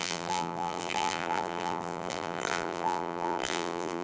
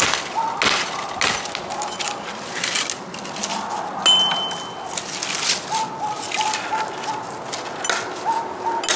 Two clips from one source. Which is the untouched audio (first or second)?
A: second